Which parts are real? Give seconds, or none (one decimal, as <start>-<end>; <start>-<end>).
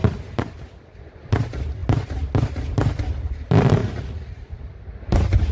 0.0-3.8; 4.6-5.5